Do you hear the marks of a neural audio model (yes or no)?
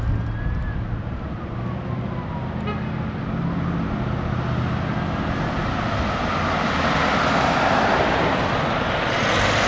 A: no